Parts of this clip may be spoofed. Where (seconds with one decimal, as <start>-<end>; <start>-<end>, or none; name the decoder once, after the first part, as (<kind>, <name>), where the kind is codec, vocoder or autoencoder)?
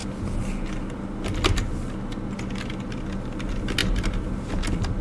3.8-4.5 (vocoder, BigVGAN v2)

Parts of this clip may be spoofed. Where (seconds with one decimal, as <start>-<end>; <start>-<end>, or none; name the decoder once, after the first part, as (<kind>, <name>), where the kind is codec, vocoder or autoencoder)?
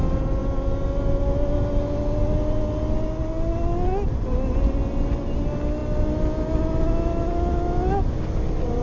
none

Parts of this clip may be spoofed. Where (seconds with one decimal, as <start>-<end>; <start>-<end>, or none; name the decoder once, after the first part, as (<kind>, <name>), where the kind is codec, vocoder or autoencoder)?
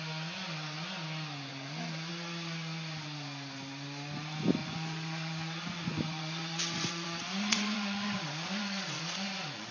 1.5-2.1 (vocoder, Vocos); 4.6-9.7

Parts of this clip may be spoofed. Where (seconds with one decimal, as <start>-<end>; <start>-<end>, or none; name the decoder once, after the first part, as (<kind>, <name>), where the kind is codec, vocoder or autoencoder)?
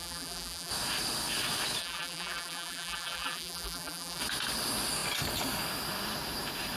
0.0-0.7 (vocoder, BigVGAN v2); 1.8-4.2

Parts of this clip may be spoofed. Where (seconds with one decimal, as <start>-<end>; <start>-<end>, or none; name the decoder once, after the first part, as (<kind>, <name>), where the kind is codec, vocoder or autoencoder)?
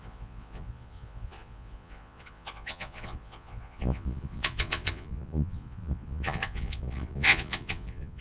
0.0-8.2 (vocoder, Vocos)